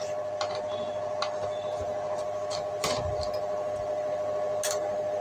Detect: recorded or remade recorded